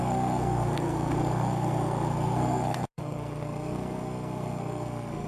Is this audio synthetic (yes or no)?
yes